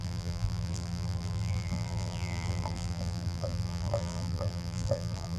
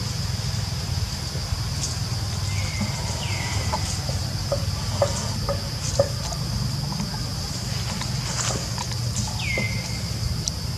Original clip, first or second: second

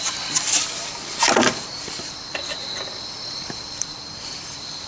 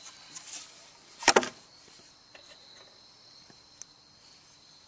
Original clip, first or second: second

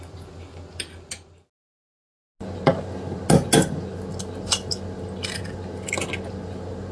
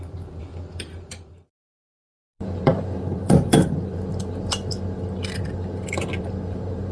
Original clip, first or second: first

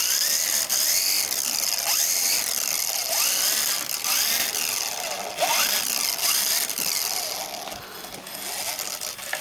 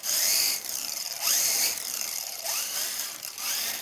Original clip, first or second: first